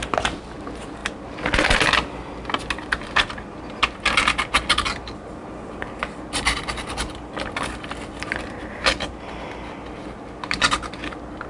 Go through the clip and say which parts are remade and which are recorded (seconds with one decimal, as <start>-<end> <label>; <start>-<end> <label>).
0.0-11.5 recorded